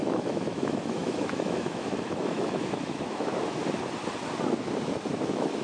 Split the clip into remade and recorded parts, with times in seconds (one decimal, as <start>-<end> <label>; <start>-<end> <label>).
0.0-3.6 remade; 3.6-5.1 recorded; 5.1-5.6 remade